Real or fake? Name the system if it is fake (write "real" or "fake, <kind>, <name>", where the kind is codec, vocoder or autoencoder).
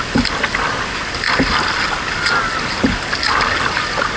real